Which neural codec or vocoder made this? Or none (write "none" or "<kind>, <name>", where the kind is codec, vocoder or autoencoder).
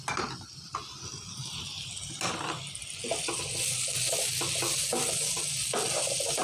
none